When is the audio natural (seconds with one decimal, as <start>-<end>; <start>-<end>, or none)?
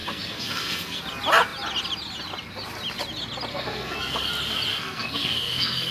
1.0-3.5; 4.3-4.7